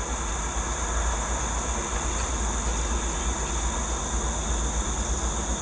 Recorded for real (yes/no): yes